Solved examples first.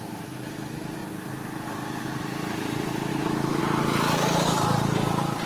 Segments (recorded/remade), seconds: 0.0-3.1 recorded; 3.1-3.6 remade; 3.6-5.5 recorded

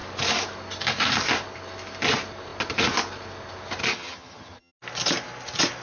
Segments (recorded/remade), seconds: 0.0-3.9 recorded; 3.9-4.7 remade; 4.7-5.8 recorded

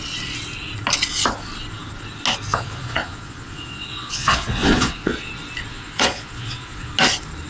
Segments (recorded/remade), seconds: 0.0-2.5 recorded; 2.5-5.3 remade; 5.3-5.7 recorded; 5.7-6.9 remade; 6.9-7.5 recorded

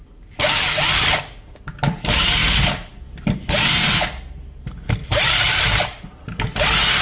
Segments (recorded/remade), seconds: 0.0-5.0 recorded; 5.0-6.2 remade; 6.2-7.0 recorded